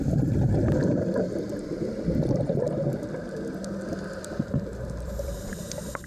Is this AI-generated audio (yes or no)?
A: yes